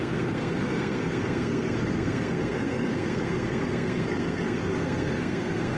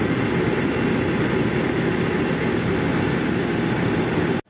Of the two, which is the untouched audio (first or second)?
second